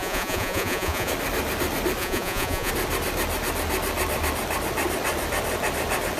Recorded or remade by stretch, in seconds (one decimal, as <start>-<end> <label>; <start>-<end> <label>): 0.0-1.1 remade; 1.1-2.0 recorded; 2.0-2.7 remade; 2.7-6.2 recorded